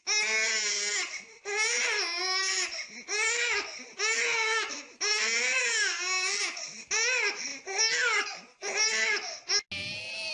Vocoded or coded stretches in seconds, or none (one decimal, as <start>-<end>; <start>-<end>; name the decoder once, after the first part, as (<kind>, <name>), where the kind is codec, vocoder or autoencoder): none